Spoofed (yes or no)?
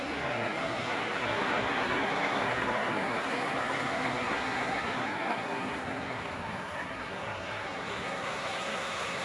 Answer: yes